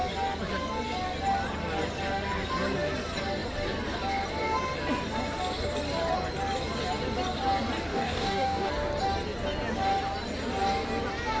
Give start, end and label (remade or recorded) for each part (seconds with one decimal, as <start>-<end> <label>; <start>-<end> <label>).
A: 0.0-7.9 recorded; 7.9-8.7 remade; 8.7-11.4 recorded